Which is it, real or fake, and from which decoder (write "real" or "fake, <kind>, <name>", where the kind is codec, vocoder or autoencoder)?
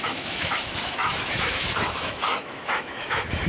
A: fake, autoencoder, DAC-VAE